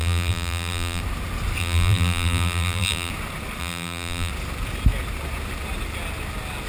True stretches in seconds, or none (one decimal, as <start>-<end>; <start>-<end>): 1.0-1.6; 3.1-3.6; 4.3-6.7